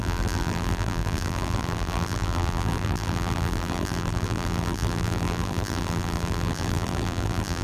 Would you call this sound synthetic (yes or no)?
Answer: yes